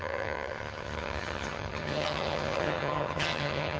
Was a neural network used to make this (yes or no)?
yes